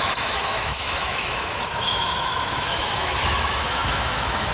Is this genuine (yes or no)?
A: no